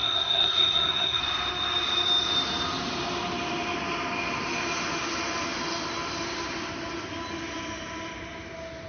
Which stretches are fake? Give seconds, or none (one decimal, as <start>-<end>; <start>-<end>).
0.0-1.2